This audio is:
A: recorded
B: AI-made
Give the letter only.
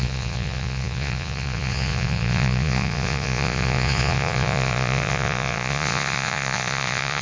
B